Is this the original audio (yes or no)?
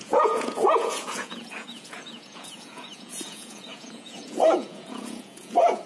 no